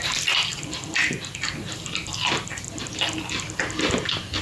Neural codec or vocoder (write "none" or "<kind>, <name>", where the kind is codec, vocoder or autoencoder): none